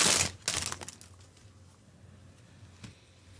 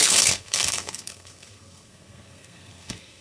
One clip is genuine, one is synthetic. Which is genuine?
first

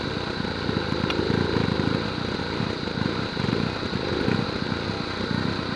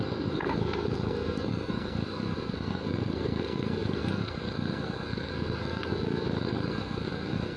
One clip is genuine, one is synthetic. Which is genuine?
first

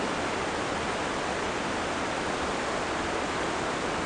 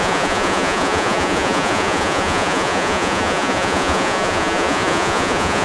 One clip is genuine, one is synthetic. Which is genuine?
first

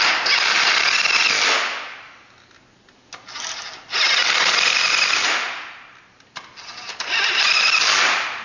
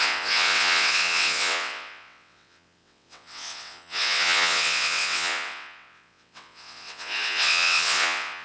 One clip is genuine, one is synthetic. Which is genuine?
first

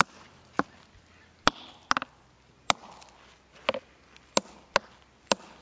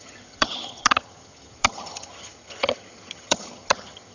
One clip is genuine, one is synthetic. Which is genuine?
first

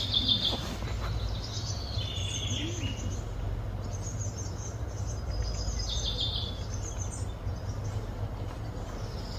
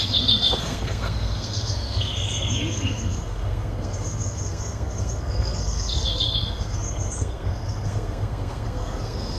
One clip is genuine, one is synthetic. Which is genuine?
first